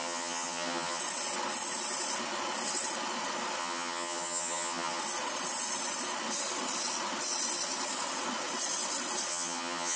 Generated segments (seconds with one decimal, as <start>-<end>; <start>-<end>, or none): 0.0-1.0; 3.6-5.0; 9.3-10.0